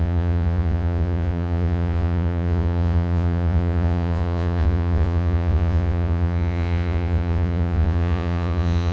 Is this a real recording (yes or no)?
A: no